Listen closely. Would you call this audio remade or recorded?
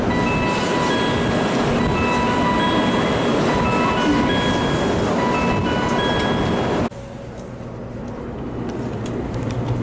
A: recorded